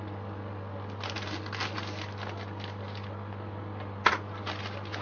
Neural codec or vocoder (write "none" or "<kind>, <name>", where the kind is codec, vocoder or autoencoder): none